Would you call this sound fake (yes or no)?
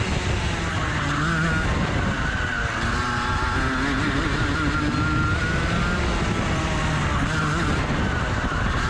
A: no